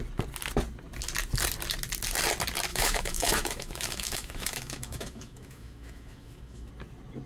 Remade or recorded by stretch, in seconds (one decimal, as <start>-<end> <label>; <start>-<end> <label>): 0.0-2.7 recorded; 2.7-6.7 remade; 6.7-7.3 recorded